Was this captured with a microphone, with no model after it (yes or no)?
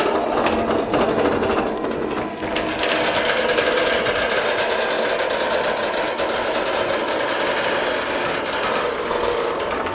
yes